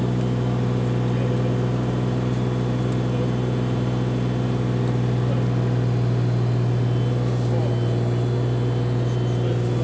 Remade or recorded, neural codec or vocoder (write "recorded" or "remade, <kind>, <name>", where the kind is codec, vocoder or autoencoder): recorded